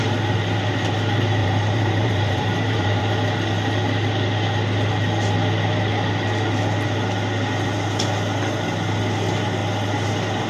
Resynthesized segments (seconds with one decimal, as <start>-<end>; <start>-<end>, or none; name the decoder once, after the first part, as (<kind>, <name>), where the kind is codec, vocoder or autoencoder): 1.4-3.0 (vocoder, BigVGAN v2)